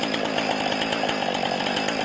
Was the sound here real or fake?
real